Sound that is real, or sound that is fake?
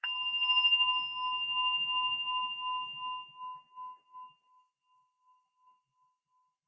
fake